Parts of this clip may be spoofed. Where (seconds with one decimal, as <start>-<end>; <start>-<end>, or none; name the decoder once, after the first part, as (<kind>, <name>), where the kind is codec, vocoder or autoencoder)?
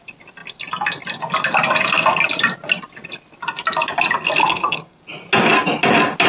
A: 4.4-5.0 (codec, SNAC)